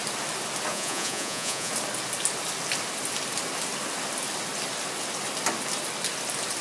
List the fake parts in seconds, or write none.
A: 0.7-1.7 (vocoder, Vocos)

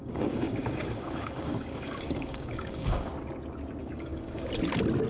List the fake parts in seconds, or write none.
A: 0.0-3.1 (codec, DAC); 3.8-4.5

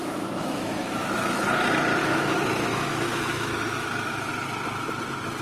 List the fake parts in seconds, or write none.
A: 0.0-1.1 (autoencoder, DAC-VAE); 2.0-4.3

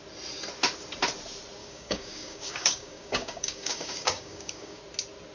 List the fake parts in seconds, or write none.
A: 1.6-4.8 (codec, DAC)

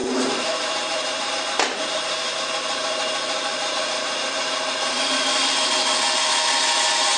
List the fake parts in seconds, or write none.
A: 0.0-1.3 (vocoder, BigVGAN v2)